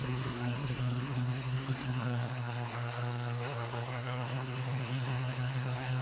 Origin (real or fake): fake